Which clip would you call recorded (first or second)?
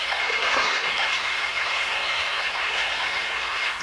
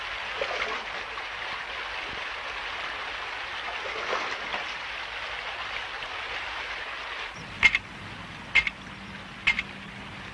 second